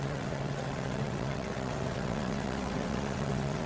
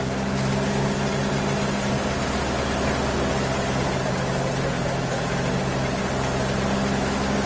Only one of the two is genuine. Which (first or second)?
second